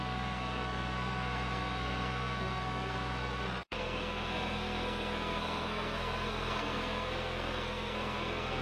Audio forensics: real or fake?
fake